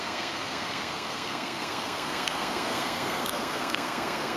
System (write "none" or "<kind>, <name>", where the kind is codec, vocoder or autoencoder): codec, SNAC